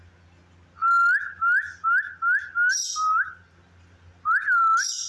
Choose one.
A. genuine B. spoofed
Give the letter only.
A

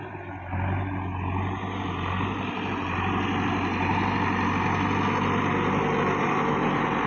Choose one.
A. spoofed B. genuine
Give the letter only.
B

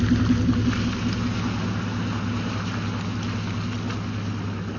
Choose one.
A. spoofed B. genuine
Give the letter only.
B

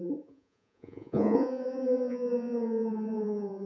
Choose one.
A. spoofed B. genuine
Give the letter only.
A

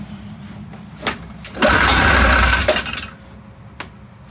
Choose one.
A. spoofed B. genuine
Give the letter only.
B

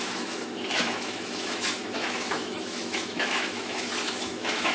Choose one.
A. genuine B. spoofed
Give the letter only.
B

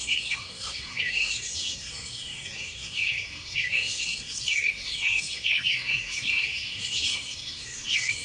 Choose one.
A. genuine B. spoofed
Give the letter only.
B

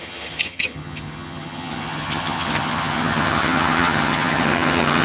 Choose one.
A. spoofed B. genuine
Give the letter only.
A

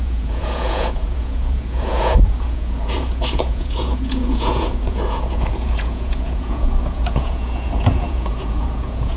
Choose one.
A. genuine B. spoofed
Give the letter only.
B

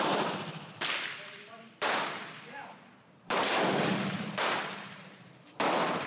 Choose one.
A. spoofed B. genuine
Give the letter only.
A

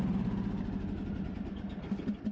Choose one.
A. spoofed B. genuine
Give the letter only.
B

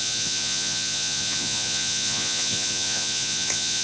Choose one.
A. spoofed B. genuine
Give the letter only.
A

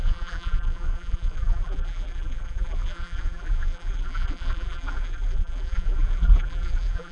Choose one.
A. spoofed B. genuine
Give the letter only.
A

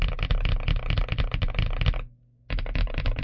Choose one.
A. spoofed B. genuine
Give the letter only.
B